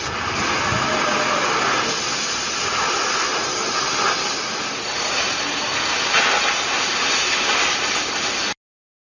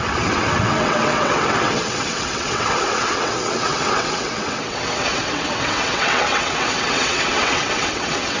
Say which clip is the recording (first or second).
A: first